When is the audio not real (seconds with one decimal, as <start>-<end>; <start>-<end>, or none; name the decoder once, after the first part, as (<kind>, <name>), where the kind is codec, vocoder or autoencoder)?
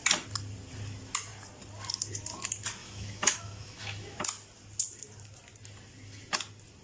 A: 2.8-4.2 (autoencoder, DAC-VAE)